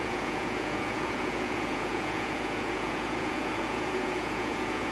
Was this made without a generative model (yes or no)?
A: no